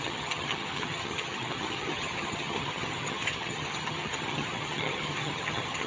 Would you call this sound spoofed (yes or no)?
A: yes